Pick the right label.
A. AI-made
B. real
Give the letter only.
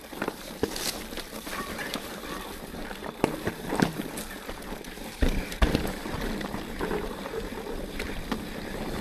A